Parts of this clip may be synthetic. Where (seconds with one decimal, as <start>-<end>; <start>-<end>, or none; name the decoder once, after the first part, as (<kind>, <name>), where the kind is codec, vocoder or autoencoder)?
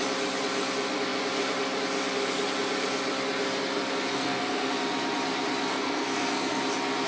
4.1-4.7 (codec, SNAC); 5.7-6.6